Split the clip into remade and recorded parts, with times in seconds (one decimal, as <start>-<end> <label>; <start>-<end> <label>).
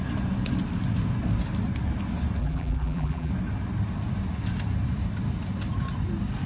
0.0-2.4 recorded; 2.4-3.3 remade; 3.3-6.5 recorded